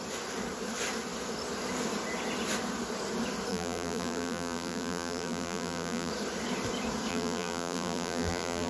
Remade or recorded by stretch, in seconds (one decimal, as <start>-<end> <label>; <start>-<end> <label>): 0.0-3.5 recorded; 3.5-6.1 remade; 6.1-7.1 recorded; 7.1-8.7 remade